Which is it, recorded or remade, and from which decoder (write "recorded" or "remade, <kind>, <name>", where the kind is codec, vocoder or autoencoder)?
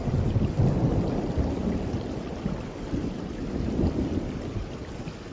recorded